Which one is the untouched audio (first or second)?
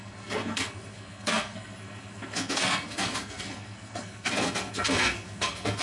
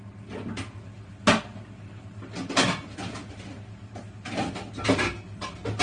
second